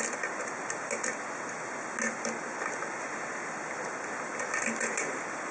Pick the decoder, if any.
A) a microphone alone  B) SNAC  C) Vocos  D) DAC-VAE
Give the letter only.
A